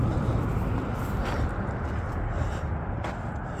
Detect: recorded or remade recorded